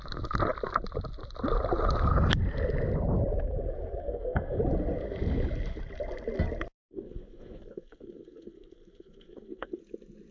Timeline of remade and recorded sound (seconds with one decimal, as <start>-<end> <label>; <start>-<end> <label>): 0.0-4.0 recorded; 4.0-4.6 remade; 4.6-6.8 recorded; 6.8-9.8 remade; 9.8-10.3 recorded